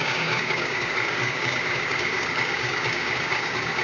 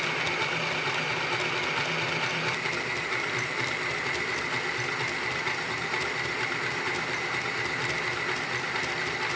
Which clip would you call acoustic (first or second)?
second